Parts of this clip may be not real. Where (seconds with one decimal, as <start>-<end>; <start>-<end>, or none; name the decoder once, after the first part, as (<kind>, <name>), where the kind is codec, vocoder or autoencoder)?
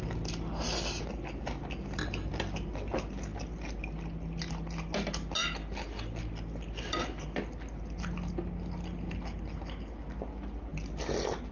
none